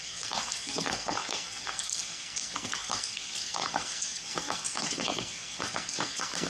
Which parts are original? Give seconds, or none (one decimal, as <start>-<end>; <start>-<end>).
none